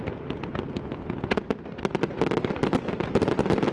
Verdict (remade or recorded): recorded